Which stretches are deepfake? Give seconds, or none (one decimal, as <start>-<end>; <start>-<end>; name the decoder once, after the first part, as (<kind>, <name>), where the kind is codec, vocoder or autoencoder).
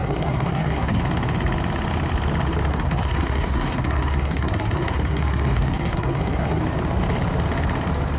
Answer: 0.0-1.0 (codec, SNAC); 2.7-6.6